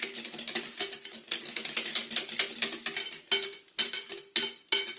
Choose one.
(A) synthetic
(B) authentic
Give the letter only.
B